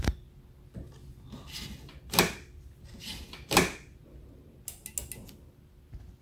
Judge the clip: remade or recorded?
recorded